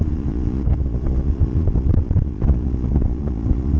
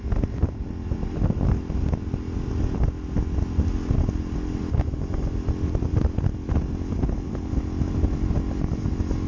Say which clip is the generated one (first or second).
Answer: first